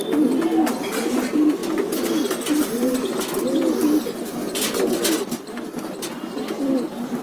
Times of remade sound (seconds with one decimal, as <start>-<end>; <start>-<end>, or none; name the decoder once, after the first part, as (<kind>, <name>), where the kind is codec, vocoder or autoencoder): none

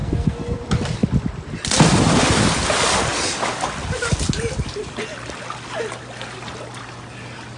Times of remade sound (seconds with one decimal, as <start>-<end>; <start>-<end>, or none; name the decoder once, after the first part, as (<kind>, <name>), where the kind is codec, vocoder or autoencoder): 0.0-0.6 (codec, SNAC)

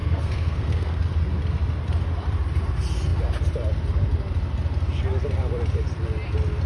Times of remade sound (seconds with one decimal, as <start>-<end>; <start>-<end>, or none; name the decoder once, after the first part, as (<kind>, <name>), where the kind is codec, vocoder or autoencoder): 0.0-1.0 (codec, SNAC)

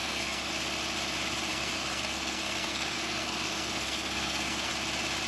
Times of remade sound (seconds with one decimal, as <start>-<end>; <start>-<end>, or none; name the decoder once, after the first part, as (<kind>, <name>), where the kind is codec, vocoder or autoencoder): 0.0-0.5 (codec, SNAC); 1.5-4.7

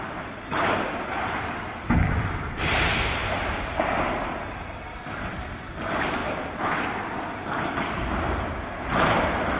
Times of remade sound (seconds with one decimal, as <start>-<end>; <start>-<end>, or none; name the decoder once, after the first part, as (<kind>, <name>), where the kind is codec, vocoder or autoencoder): none

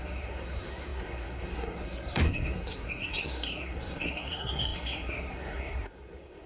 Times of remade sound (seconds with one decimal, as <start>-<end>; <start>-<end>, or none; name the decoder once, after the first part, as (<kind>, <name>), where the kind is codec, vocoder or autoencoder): 0.0-6.5 (codec, SNAC)

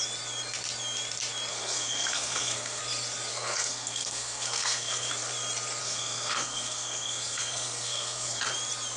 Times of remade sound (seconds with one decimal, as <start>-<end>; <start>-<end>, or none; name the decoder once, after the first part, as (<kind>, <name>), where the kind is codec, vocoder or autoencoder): 1.5-2.8 (codec, SNAC); 3.3-5.1; 5.8-8.4